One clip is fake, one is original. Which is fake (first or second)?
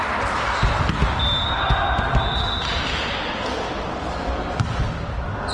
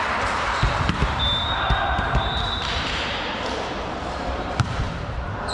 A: second